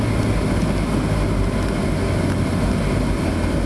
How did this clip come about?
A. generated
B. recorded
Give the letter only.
B